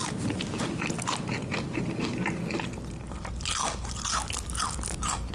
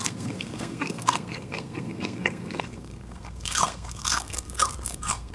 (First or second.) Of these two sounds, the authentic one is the first